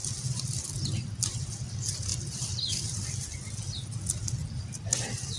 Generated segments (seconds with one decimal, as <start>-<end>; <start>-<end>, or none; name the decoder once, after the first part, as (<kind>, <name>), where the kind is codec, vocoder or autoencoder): none

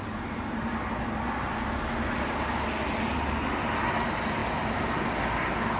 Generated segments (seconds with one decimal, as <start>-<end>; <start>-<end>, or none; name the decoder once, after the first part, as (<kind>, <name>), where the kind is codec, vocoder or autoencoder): none

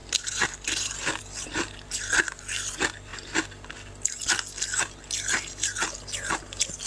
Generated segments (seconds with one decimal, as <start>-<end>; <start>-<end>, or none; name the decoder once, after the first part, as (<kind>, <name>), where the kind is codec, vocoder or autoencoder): 0.0-1.2 (vocoder, BigVGAN v2)